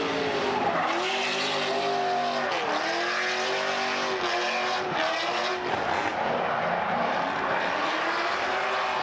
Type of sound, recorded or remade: recorded